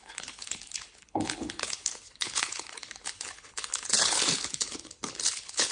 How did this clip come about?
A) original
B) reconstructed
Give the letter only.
B